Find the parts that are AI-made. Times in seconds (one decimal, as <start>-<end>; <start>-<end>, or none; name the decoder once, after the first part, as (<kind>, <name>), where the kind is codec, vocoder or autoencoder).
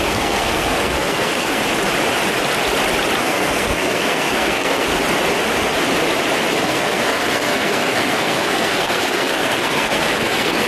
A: 0.0-1.6 (codec, SNAC); 3.2-4.9; 6.5-10.7